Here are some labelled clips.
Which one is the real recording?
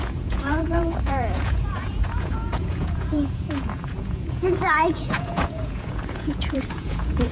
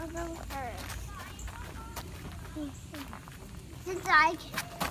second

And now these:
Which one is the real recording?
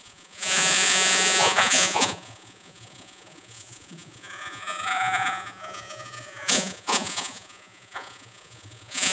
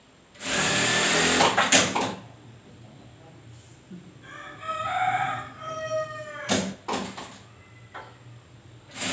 second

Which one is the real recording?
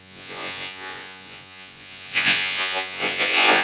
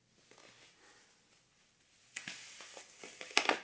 second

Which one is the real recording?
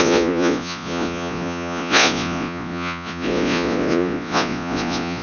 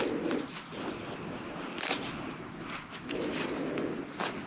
second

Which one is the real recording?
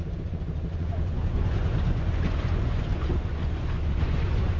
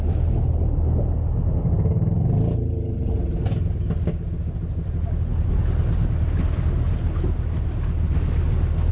second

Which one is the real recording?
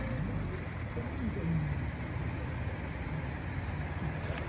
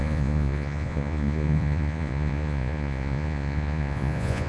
first